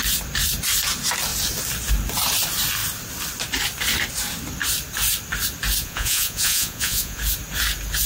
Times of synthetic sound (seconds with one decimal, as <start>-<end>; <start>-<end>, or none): 5.8-7.2